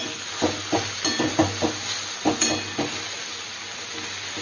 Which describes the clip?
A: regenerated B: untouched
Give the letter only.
B